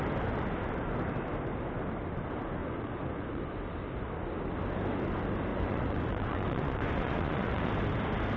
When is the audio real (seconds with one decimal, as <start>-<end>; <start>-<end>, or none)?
0.0-2.6; 3.4-5.5; 7.7-8.4